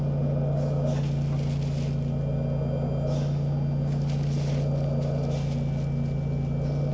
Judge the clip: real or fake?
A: real